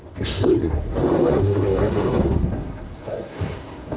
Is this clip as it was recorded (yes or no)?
no